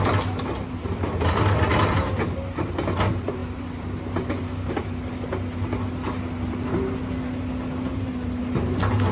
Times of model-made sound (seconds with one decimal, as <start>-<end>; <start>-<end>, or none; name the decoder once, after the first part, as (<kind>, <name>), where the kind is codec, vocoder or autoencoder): none